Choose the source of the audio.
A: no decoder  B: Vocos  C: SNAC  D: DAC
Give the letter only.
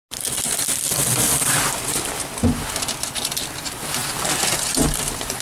A